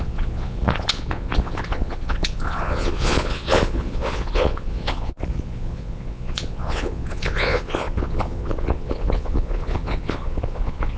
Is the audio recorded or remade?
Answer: remade